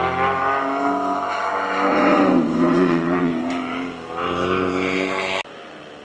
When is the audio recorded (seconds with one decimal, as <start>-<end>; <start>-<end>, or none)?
0.0-1.9; 3.3-6.0